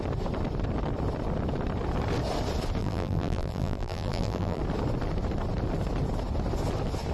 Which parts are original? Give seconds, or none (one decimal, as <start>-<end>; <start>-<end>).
0.0-2.8; 4.6-7.1